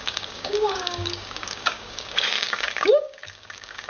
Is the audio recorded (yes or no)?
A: no